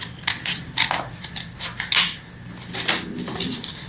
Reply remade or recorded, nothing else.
recorded